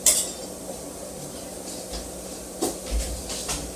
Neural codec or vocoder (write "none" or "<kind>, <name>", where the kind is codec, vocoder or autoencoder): none